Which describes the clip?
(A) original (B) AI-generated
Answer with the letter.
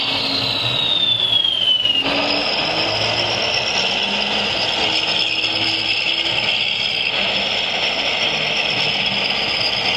A